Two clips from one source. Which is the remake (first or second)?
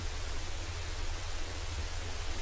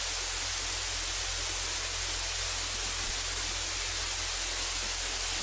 first